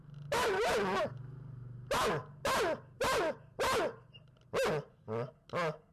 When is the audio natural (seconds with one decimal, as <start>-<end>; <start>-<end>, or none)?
0.0-5.9